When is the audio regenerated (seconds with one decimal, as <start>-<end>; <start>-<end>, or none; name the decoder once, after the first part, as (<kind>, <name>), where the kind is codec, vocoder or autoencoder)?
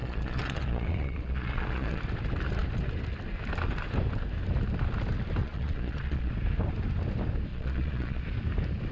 0.0-2.0 (vocoder, Vocos); 5.4-6.3; 7.5-8.2